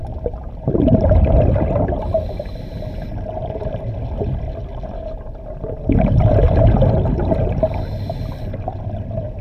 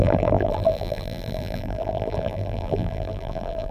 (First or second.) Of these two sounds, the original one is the first